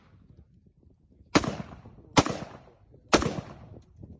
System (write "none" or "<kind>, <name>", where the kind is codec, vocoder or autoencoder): none